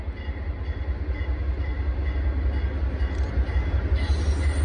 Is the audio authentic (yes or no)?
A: yes